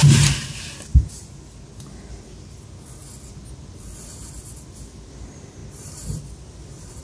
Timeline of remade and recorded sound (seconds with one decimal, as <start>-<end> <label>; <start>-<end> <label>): 0.0-5.6 recorded; 5.6-7.0 remade